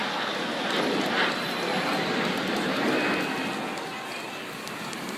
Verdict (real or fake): real